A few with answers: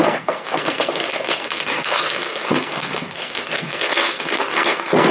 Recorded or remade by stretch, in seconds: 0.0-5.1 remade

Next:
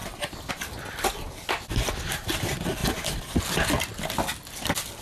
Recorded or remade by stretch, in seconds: 0.0-5.0 recorded

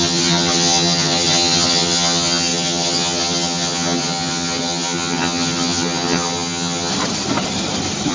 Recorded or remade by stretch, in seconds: 0.0-6.9 remade; 6.9-8.1 recorded

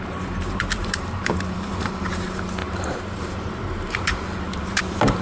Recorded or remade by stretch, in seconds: 0.0-5.2 remade

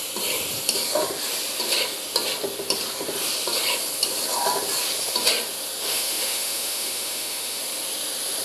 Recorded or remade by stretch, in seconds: 0.0-5.8 recorded; 5.8-7.6 remade; 7.6-8.4 recorded

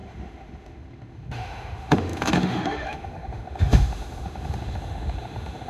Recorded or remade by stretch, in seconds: 0.0-5.7 remade

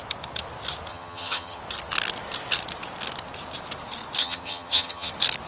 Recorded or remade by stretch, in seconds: 0.0-0.9 recorded; 0.9-1.6 remade; 1.6-4.2 recorded; 4.2-5.1 remade; 5.1-5.5 recorded

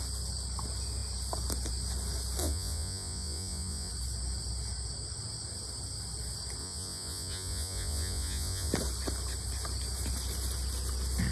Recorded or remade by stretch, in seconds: 0.0-2.4 recorded; 2.4-3.9 remade; 3.9-6.6 recorded; 6.6-8.7 remade; 8.7-11.3 recorded